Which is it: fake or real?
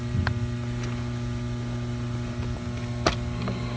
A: real